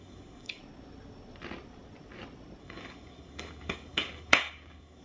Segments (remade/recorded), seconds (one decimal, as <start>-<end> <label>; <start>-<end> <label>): 0.0-0.6 remade; 0.6-2.6 recorded; 2.6-5.0 remade